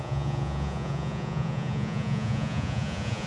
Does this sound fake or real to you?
fake